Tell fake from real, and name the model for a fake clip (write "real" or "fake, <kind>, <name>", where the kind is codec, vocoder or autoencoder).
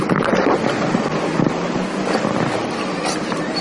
real